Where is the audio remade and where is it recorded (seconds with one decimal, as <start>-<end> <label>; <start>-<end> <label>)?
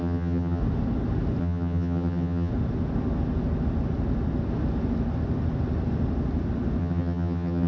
0.0-0.6 remade; 0.6-1.4 recorded; 1.4-2.5 remade; 2.5-6.8 recorded; 6.8-7.7 remade